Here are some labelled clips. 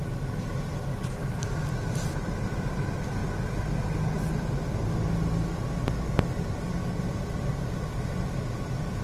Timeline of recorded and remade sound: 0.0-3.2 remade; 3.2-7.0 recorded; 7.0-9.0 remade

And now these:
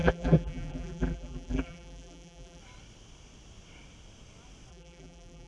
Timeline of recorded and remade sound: 0.0-2.6 remade; 2.6-4.7 recorded; 4.7-5.5 remade

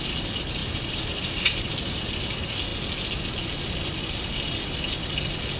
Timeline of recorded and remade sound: 0.0-0.6 recorded; 0.6-1.7 remade; 1.7-5.6 recorded

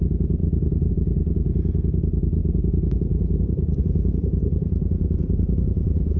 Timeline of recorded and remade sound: 0.0-6.2 remade